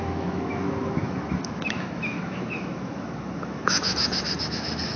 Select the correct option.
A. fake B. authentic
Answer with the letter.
A